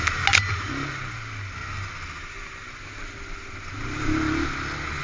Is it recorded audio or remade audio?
recorded